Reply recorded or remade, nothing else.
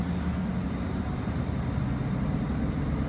recorded